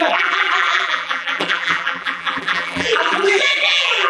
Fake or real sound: fake